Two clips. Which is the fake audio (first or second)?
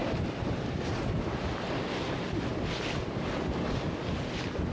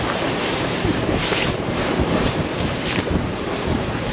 second